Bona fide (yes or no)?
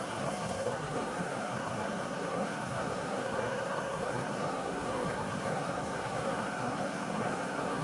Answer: no